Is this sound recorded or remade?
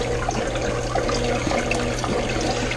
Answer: recorded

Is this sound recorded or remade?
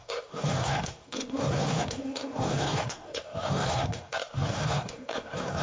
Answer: remade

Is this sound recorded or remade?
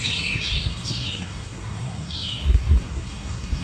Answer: remade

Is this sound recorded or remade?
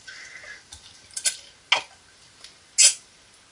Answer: recorded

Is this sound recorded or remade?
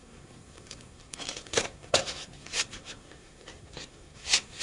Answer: remade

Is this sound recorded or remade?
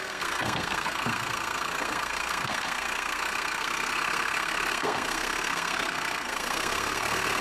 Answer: remade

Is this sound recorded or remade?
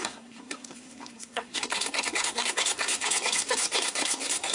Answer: remade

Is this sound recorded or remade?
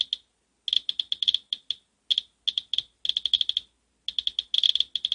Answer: recorded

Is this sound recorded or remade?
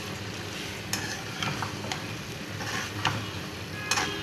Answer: recorded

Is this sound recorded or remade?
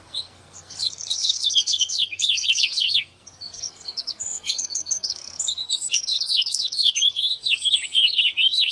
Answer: remade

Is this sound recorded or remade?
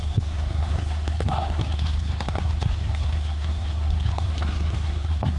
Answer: remade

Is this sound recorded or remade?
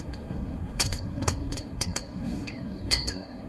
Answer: remade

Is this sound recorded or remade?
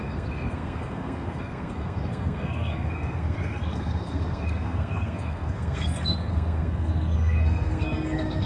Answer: remade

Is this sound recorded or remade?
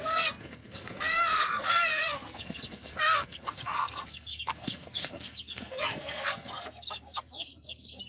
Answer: remade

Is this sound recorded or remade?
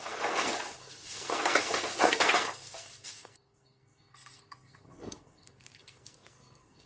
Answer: remade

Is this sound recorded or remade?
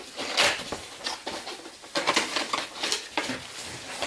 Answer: recorded